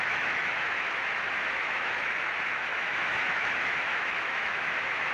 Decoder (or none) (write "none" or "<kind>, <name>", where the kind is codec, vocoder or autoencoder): autoencoder, DAC-VAE